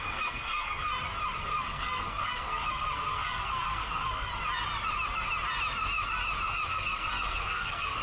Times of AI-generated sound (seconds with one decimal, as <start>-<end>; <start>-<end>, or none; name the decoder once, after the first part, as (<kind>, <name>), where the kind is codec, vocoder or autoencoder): 0.0-0.9 (codec, SNAC); 1.4-4.3; 6.7-8.0